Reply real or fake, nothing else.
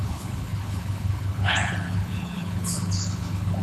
fake